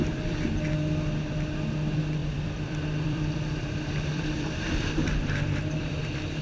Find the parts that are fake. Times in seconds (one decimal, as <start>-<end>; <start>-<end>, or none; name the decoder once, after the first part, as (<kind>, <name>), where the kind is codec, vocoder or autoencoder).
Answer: 2.2-6.0 (vocoder, BigVGAN v2)